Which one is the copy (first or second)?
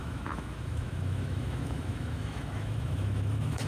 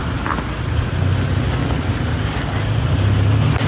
first